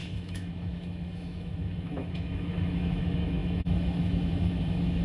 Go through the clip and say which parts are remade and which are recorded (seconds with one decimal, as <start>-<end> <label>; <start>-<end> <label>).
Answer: 0.0-5.0 remade